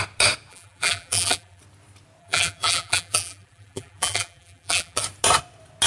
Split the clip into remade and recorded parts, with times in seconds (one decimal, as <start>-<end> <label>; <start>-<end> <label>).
0.0-0.5 recorded; 0.5-1.6 remade; 1.6-2.2 recorded; 2.2-5.0 remade; 5.0-5.9 recorded